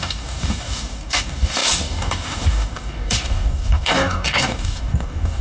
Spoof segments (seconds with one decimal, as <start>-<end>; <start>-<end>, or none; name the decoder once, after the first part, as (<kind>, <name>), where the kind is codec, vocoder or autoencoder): 0.0-5.4 (codec, DAC)